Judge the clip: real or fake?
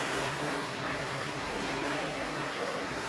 fake